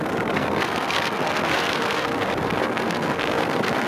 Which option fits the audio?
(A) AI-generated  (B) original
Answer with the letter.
A